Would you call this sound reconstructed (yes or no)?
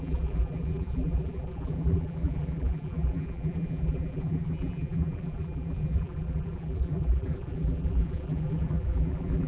yes